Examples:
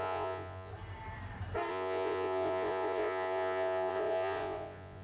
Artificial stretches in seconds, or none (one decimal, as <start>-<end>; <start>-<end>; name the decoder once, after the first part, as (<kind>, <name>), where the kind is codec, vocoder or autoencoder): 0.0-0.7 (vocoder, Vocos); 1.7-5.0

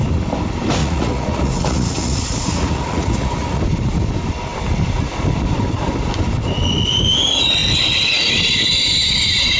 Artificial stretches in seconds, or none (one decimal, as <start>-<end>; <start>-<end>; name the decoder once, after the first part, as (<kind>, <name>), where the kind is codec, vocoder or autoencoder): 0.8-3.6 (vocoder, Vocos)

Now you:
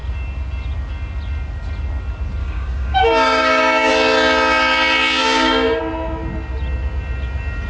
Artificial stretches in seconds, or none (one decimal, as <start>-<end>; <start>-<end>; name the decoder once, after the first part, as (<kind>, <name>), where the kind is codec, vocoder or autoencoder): 2.4-3.9 (codec, DAC); 5.2-5.8

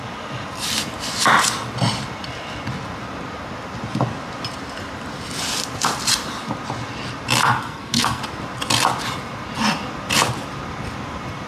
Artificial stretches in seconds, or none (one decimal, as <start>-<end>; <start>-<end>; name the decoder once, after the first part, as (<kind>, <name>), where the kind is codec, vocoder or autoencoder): 7.4-8.2 (codec, SNAC)

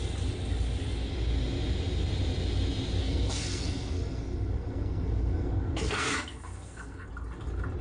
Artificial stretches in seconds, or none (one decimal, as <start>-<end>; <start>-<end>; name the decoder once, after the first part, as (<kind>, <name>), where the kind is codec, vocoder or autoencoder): 3.0-7.1 (codec, SNAC)

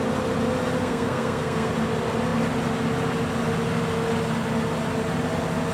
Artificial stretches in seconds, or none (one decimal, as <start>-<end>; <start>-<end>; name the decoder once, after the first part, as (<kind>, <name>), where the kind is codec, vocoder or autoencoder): 0.8-1.7 (codec, SNAC)

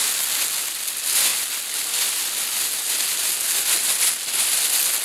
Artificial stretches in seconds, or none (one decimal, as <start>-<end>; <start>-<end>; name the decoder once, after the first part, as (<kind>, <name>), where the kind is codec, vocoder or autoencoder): none

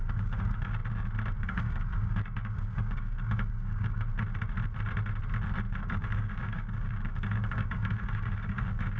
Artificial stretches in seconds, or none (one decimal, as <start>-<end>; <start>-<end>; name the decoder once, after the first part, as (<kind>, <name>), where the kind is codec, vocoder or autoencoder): 0.0-0.8 (codec, DAC); 1.4-4.1; 5.8-9.0